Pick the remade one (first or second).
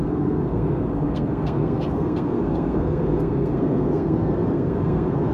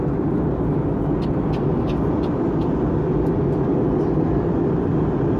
first